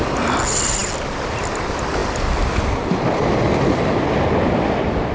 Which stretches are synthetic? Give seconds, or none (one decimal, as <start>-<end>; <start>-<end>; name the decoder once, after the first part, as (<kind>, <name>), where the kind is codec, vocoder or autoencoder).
none